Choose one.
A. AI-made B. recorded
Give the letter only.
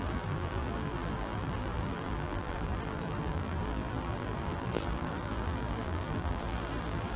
A